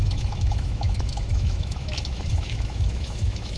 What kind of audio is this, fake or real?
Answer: fake